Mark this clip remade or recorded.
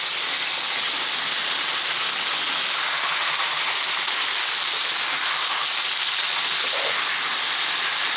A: recorded